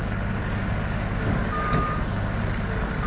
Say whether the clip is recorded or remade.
remade